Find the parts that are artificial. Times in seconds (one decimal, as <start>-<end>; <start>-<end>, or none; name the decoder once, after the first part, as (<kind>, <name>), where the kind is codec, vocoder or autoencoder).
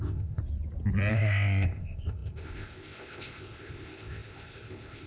0.0-0.4 (codec, ZipCodec); 1.1-5.1